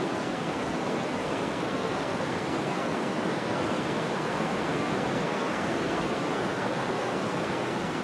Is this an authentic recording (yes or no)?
no